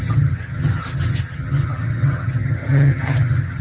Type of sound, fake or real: fake